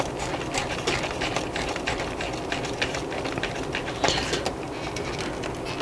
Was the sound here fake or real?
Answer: real